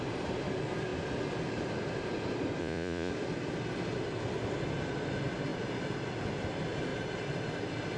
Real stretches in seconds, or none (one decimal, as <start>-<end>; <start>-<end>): 0.0-2.6; 3.1-8.0